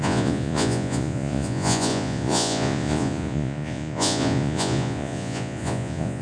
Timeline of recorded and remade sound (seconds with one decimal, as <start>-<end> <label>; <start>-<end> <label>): 0.0-6.2 remade